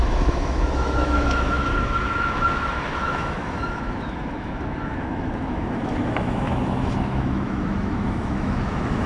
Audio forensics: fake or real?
fake